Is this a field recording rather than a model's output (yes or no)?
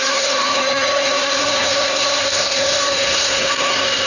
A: no